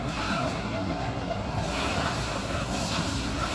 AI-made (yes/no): yes